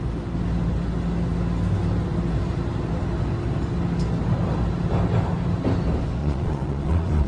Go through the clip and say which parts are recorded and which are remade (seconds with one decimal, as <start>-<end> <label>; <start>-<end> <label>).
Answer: 0.0-6.2 recorded; 6.2-7.3 remade